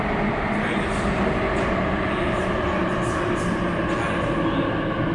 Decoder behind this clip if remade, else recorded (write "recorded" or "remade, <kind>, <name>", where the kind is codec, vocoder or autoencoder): recorded